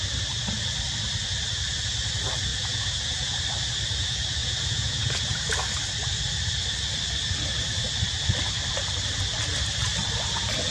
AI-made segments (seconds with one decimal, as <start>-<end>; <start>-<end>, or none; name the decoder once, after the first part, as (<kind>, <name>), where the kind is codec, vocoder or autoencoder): 2.5-3.4 (vocoder, Vocos); 4.4-5.5